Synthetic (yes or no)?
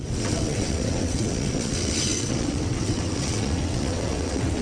yes